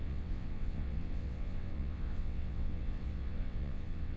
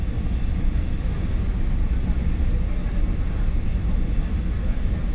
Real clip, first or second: second